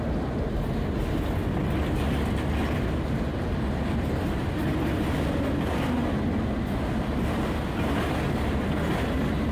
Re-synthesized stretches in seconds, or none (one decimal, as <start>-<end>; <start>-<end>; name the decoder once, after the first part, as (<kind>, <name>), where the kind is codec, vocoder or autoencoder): none

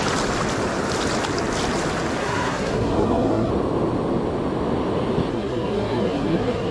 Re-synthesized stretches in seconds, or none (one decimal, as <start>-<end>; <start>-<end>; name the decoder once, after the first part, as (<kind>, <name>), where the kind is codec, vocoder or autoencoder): 2.2-3.5 (codec, SNAC); 5.3-6.7

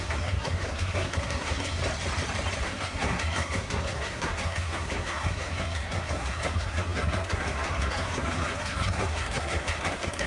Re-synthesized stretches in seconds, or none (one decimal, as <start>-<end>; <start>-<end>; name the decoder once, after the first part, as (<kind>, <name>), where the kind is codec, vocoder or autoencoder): 0.0-1.8 (codec, SNAC); 2.6-10.3